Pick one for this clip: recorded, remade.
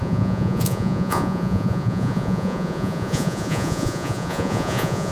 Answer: remade